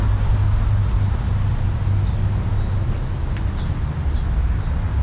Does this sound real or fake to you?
real